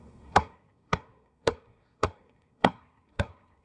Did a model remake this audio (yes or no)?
yes